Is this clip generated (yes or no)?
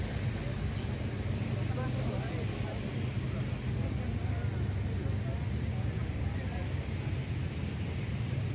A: no